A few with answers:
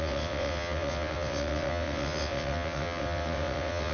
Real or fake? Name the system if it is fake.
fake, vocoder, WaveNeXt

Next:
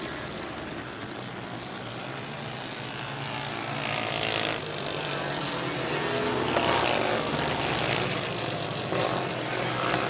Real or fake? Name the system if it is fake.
real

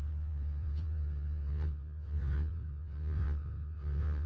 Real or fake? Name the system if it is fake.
fake, vocoder, WaveNeXt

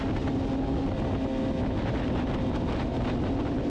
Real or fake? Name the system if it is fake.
real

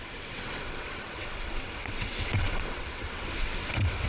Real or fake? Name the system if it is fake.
fake, vocoder, WaveNeXt